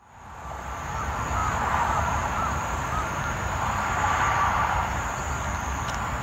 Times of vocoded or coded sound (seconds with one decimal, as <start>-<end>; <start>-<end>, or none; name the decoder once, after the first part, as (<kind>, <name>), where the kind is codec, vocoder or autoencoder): 1.4-5.0 (vocoder, BigVGAN v2)